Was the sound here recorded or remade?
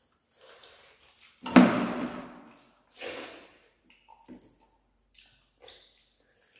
recorded